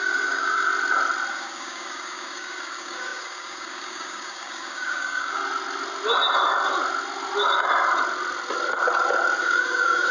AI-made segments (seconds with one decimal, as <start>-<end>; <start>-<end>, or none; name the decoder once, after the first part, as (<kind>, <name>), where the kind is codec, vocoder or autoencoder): 0.0-0.7 (codec, DAC); 1.3-5.4; 9.4-10.1

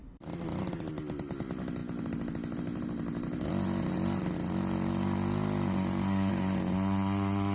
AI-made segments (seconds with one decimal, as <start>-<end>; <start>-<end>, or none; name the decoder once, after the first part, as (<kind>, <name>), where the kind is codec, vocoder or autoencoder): none

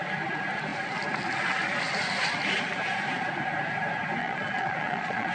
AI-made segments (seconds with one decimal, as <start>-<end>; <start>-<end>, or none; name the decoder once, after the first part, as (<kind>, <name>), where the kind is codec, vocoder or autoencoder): 4.2-5.3 (vocoder, Vocos)

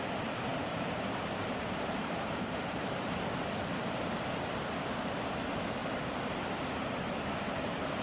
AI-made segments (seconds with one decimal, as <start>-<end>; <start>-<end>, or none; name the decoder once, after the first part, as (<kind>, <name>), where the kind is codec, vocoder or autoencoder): 0.5-2.9 (vocoder, BigVGAN v2); 5.8-6.3

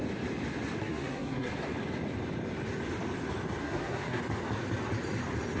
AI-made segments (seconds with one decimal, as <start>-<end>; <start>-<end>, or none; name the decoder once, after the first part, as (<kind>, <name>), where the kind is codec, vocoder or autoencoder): 0.8-1.5 (codec, SNAC); 3.6-4.2